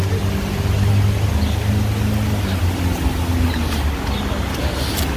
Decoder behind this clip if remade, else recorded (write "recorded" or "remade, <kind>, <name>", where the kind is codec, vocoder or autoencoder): recorded